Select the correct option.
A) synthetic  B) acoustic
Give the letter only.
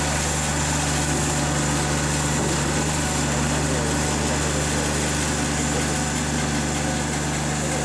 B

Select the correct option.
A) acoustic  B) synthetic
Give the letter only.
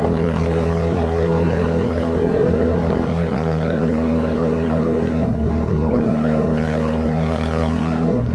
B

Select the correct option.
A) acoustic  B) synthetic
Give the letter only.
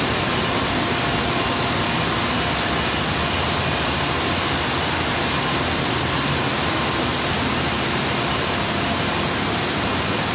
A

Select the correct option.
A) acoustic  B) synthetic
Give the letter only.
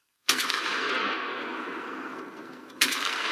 B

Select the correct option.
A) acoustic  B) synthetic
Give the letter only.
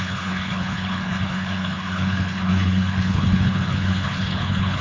B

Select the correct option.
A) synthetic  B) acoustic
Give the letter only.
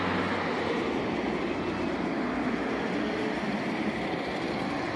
B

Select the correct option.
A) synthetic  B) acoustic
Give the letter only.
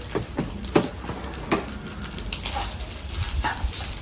B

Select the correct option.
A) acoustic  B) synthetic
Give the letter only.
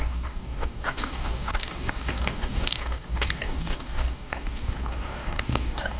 B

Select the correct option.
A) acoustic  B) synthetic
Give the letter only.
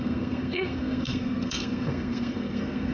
B